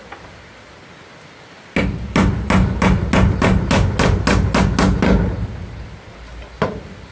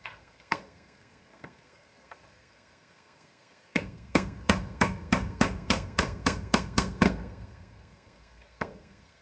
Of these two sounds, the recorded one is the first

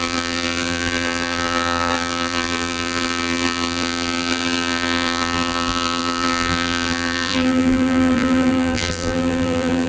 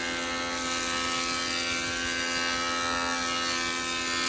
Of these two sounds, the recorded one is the second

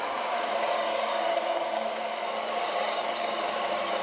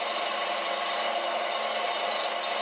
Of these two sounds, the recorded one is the second